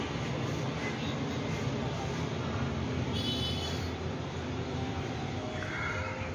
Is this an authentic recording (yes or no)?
yes